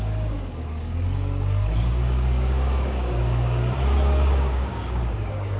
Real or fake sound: fake